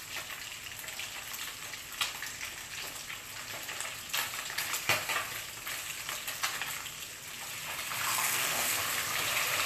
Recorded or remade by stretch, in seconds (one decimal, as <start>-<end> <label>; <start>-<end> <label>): 0.0-8.1 recorded; 8.1-8.8 remade; 8.8-9.7 recorded